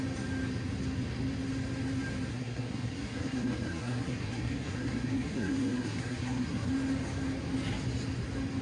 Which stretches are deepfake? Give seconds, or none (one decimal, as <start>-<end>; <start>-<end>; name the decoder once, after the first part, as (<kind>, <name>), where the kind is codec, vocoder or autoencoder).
2.3-6.7 (codec, SNAC)